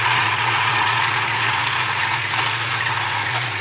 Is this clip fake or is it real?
fake